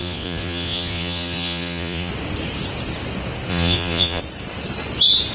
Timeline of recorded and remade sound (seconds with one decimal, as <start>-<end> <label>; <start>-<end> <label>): 0.0-2.1 remade; 2.1-3.5 recorded; 3.5-4.2 remade; 4.2-5.3 recorded